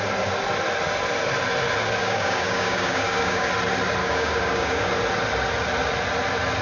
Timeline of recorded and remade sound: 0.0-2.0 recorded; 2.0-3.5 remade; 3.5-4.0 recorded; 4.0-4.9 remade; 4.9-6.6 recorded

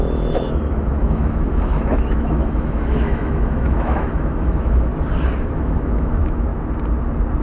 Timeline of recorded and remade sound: 0.0-4.9 remade; 4.9-5.4 recorded; 5.4-6.5 remade; 6.5-7.4 recorded

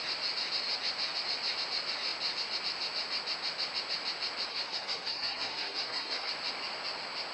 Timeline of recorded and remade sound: 0.0-4.5 recorded; 4.5-6.3 remade; 6.3-7.3 recorded

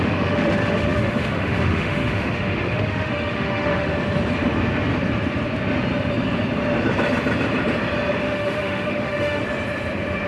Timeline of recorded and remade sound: 0.0-3.9 remade; 3.9-8.2 recorded; 8.2-9.4 remade; 9.4-10.3 recorded

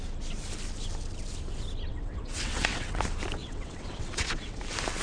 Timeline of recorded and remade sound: 0.0-1.9 recorded; 1.9-3.0 remade; 3.0-3.4 recorded; 3.4-4.6 remade; 4.6-5.0 recorded

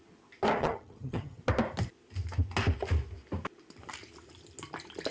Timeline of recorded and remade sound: 0.0-0.6 recorded; 0.6-1.4 remade; 1.4-5.1 recorded

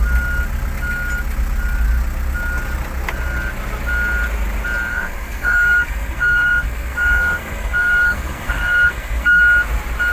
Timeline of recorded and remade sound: 0.0-4.9 recorded; 4.9-9.4 remade; 9.4-10.1 recorded